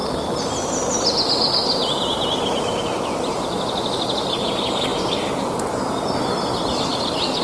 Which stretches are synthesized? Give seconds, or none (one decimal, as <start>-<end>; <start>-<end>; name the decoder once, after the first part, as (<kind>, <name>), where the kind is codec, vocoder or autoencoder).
none